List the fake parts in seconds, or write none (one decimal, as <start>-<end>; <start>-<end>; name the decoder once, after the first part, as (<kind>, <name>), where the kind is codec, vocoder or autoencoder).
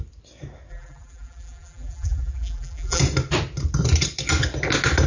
0.7-3.0 (vocoder, BigVGAN v2)